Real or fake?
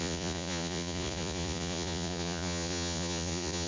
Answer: fake